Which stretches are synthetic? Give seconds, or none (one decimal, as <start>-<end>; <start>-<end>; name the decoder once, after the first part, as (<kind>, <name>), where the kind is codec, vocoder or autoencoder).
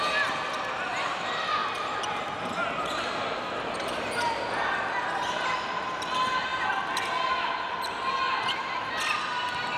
1.6-2.2 (vocoder, BigVGAN v2)